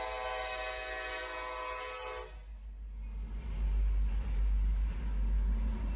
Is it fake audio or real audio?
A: real